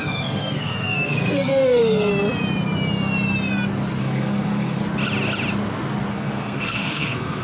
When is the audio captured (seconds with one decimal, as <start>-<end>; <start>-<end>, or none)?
2.1-4.0; 4.8-6.1